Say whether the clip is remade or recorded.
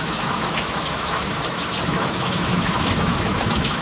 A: remade